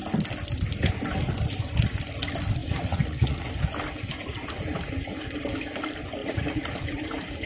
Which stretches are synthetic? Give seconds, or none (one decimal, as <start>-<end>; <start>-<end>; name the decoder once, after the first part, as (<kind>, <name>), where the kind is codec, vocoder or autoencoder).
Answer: 2.6-3.5 (vocoder, Vocos); 6.2-6.8